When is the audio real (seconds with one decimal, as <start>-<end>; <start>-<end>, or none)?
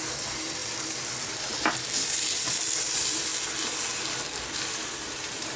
3.3-4.7